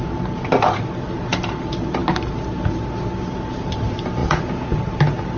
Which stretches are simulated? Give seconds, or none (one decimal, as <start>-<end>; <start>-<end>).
4.2-4.8